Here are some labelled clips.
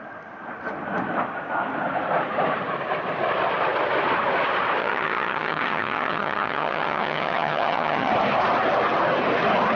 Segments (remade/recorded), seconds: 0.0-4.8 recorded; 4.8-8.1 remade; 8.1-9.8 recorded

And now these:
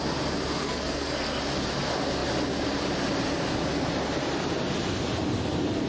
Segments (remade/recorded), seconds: 0.0-0.6 recorded; 0.6-1.4 remade; 1.4-5.9 recorded

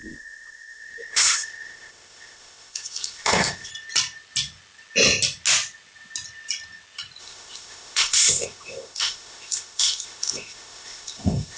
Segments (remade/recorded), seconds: 0.0-3.7 remade; 3.7-7.2 recorded; 7.2-11.6 remade

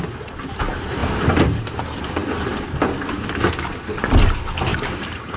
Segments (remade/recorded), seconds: 0.0-1.0 recorded; 1.0-1.8 remade; 1.8-4.7 recorded; 4.7-5.4 remade

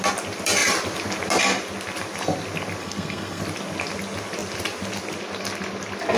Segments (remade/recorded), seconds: 0.0-2.8 recorded; 2.8-3.4 remade; 3.4-6.2 recorded